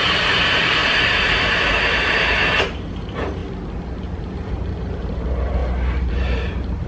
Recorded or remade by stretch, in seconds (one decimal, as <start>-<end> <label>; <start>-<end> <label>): 0.0-3.4 remade; 3.4-4.2 recorded; 4.2-6.9 remade

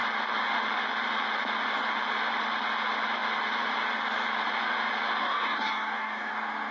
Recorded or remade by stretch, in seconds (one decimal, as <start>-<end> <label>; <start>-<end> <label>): 0.0-5.2 recorded; 5.2-6.3 remade; 6.3-6.7 recorded